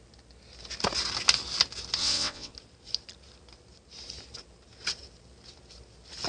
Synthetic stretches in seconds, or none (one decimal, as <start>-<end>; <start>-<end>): 2.0-2.5